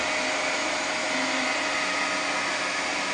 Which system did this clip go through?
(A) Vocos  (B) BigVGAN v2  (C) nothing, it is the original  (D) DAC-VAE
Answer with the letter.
C